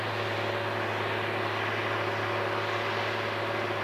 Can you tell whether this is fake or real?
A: real